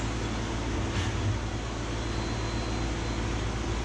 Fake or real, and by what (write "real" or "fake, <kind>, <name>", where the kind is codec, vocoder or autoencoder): real